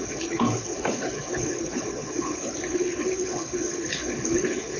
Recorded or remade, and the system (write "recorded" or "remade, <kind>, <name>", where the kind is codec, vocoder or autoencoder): remade, codec, HILCodec